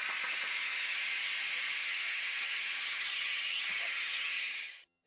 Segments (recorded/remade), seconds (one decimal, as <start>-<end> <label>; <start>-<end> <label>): 0.0-0.6 recorded; 0.6-1.3 remade; 1.3-1.8 recorded; 1.8-5.1 remade